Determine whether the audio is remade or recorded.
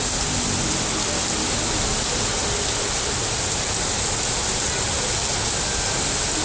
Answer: recorded